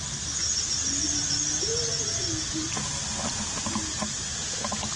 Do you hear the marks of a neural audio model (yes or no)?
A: no